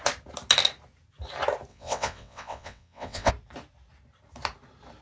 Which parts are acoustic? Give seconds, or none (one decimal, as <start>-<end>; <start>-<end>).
0.0-1.7; 3.3-5.0